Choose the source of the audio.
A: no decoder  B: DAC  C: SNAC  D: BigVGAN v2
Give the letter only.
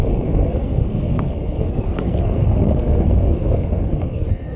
C